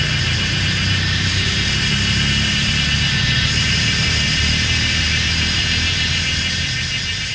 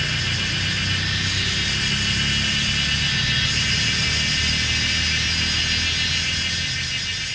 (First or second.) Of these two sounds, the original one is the second